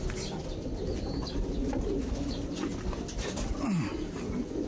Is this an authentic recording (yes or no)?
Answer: yes